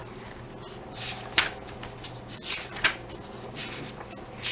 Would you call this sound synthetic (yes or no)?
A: no